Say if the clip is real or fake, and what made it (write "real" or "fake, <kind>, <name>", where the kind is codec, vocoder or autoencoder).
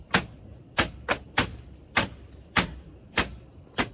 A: fake, vocoder, BigVGAN v2